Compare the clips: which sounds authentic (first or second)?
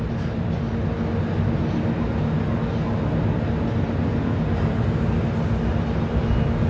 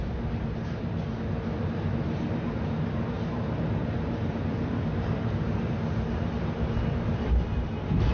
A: first